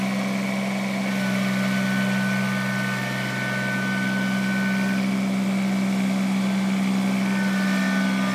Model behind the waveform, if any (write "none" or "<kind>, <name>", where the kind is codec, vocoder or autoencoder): none